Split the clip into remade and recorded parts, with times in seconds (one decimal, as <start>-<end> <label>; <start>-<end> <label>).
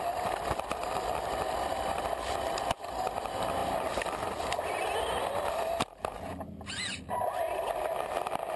0.0-8.6 recorded